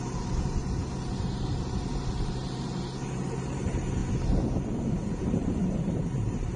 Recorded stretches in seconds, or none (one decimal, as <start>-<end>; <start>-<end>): 0.6-1.2; 4.0-4.9